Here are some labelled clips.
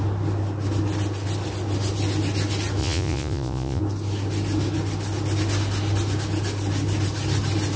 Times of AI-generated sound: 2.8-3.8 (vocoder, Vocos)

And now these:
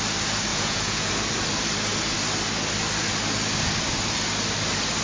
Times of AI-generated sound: 0.5-1.1 (vocoder, Vocos)

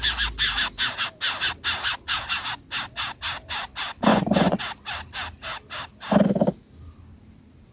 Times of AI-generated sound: 4.1-4.6 (vocoder, Vocos)

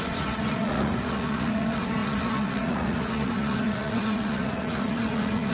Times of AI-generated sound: 0.0-5.5 (vocoder, Vocos)

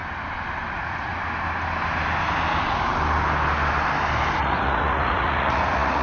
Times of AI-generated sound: 0.7-1.1 (vocoder, Vocos); 4.3-6.0

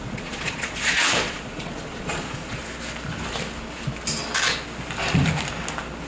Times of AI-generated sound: 0.0-2.6 (vocoder, Vocos)

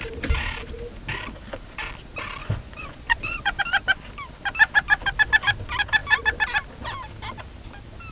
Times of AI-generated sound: 2.4-3.6 (vocoder, Vocos)

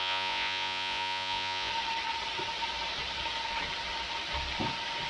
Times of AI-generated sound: 0.0-1.7 (vocoder, Vocos)